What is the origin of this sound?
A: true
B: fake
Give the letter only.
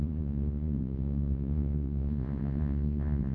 B